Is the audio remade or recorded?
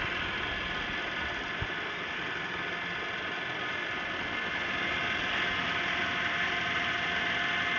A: recorded